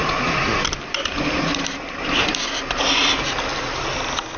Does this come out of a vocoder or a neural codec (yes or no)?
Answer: no